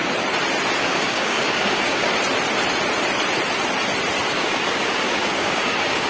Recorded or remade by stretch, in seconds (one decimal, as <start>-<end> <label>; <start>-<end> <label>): 0.0-0.8 recorded; 0.8-2.1 remade; 2.1-4.3 recorded; 4.3-6.1 remade